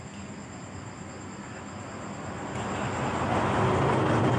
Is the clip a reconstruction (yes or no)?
no